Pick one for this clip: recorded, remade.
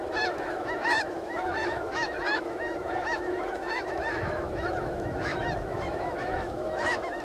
remade